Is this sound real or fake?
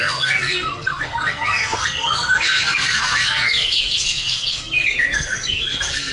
fake